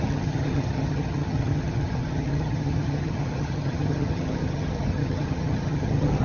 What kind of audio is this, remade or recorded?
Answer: remade